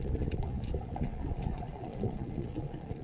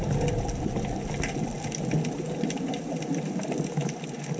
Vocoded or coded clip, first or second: first